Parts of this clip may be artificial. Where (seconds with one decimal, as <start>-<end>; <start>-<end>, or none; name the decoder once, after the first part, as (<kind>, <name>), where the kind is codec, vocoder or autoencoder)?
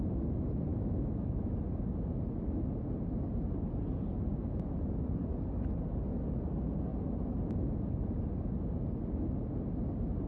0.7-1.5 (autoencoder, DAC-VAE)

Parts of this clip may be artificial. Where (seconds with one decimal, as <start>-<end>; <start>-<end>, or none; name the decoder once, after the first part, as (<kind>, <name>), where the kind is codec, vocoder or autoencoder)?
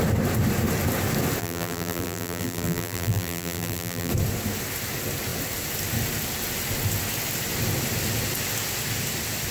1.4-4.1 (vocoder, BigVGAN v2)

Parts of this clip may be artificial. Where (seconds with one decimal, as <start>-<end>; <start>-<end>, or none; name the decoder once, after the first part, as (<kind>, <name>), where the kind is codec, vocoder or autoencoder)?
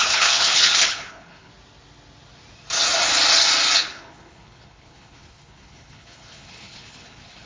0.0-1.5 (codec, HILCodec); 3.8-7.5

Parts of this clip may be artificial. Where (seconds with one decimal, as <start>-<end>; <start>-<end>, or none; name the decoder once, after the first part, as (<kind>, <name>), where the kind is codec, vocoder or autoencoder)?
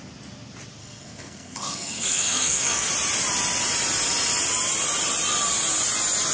0.8-2.9 (codec, SNAC)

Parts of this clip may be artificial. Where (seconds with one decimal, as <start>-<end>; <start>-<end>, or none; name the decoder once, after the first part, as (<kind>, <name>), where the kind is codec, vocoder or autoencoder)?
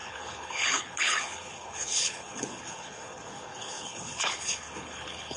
0.0-5.4 (codec, HILCodec)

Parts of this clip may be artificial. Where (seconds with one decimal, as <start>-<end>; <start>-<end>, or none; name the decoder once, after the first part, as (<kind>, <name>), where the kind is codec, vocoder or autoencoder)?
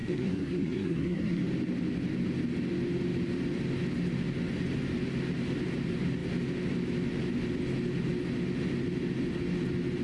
0.0-1.4 (codec, SNAC)